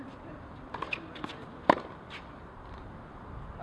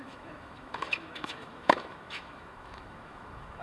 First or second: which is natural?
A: first